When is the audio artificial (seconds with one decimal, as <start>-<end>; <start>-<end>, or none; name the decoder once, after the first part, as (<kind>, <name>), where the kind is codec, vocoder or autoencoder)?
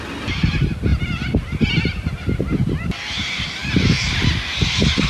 0.9-2.1 (vocoder, BigVGAN v2); 3.6-4.2